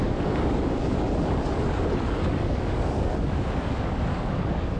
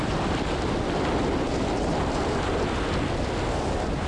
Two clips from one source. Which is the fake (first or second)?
first